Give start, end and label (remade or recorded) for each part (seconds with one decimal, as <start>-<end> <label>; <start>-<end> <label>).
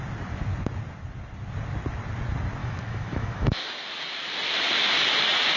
0.0-2.6 recorded; 2.6-3.7 remade; 3.7-5.6 recorded